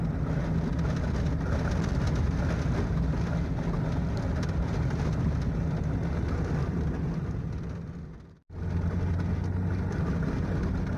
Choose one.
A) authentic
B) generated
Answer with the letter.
A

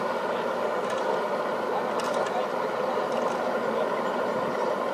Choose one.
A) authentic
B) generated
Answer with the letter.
A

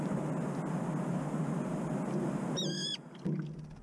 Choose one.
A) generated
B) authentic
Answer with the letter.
B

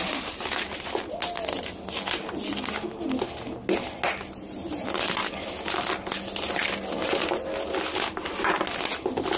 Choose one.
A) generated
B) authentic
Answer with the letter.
B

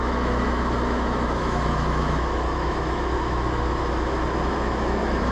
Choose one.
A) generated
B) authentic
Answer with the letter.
A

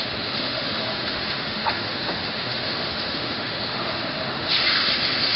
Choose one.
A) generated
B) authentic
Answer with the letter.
A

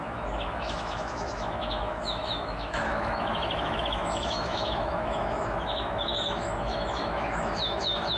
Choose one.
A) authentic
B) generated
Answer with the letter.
B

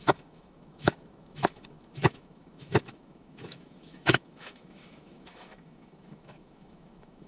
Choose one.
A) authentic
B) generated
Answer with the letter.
B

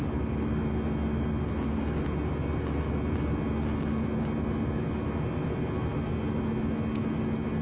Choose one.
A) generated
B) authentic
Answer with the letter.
B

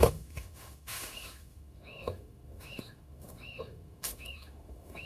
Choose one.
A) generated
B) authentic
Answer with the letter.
A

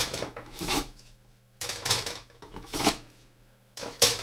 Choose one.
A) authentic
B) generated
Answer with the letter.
B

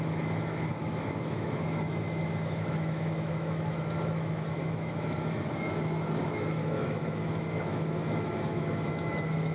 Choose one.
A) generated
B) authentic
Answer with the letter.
A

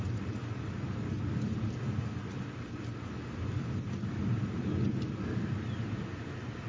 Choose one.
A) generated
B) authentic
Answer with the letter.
B